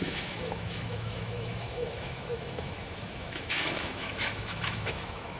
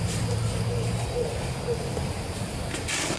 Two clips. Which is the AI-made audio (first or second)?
first